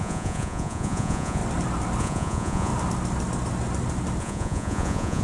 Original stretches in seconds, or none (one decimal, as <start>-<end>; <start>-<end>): 1.4-2.0; 2.7-4.2